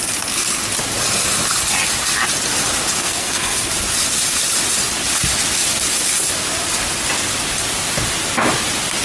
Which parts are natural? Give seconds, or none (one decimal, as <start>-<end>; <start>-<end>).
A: 0.0-3.0; 3.7-9.0